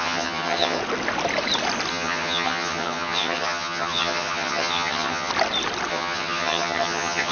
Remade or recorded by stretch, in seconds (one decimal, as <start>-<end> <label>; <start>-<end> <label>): 0.0-0.8 remade; 0.8-1.9 recorded; 1.9-5.3 remade; 5.3-5.9 recorded; 5.9-7.3 remade